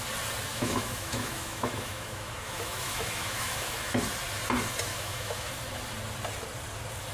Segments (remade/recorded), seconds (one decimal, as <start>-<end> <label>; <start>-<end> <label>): 0.0-0.5 recorded; 0.5-4.0 remade; 4.0-4.9 recorded; 4.9-5.5 remade; 5.5-7.1 recorded